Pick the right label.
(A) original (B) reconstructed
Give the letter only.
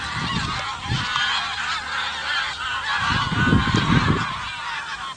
A